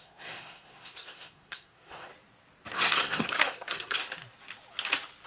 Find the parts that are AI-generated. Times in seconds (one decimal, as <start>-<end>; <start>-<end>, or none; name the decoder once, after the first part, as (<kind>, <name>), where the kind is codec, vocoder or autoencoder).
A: 0.0-2.1 (codec, SNAC); 2.7-4.0